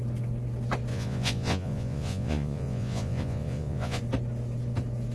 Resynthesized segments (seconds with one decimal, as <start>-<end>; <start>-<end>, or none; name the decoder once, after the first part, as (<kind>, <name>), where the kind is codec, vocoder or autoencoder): 0.9-4.0 (vocoder, Vocos)